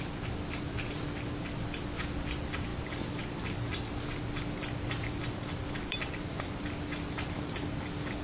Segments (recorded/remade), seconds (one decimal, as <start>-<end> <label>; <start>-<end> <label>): 0.0-8.2 recorded